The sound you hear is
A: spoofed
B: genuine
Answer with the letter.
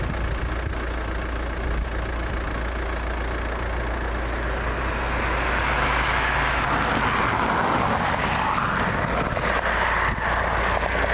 B